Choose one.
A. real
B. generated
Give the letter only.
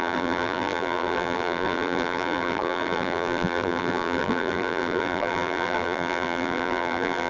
B